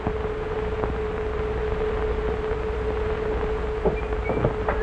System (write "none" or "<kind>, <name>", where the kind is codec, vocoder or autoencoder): none